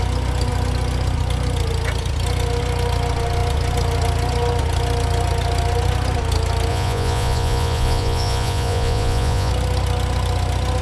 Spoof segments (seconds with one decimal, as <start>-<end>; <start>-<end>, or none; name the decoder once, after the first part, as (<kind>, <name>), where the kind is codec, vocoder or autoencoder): 6.7-9.5 (vocoder, Vocos)